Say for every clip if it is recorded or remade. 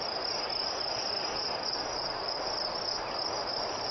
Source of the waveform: remade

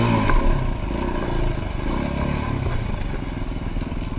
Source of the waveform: recorded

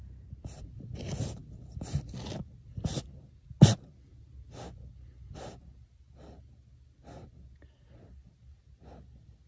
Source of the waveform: recorded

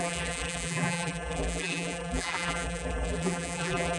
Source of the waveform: remade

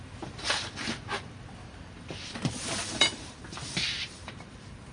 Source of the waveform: remade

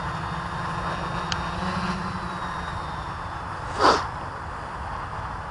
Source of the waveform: recorded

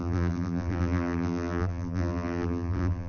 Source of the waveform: remade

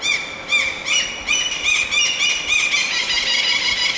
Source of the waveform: recorded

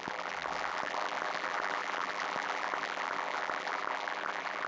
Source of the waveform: remade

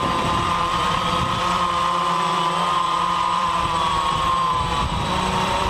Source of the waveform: remade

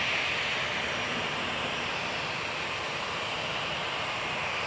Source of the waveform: recorded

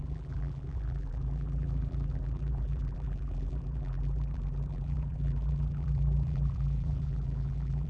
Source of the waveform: remade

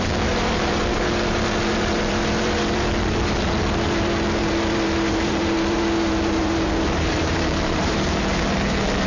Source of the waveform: remade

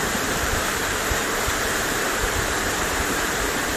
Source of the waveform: remade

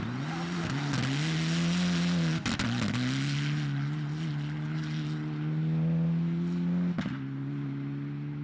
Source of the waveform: recorded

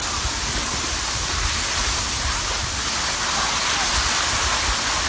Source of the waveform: recorded